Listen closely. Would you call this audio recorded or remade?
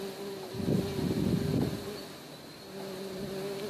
recorded